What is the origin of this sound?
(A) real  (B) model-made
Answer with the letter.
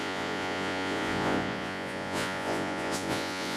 B